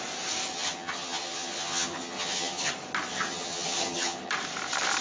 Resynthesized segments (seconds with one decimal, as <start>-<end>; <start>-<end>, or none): 0.5-2.7; 3.1-4.3

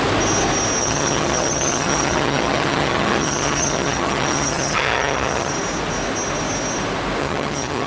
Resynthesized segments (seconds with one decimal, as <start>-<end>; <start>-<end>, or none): 0.8-5.5; 7.2-7.9

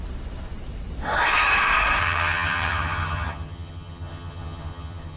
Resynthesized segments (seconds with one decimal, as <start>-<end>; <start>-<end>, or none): 2.0-5.2

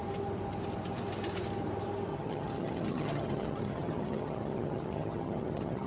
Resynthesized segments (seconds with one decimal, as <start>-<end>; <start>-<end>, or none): 2.1-5.9